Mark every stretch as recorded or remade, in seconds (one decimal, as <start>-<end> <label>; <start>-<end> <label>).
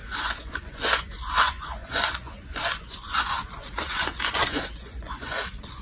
0.0-5.8 remade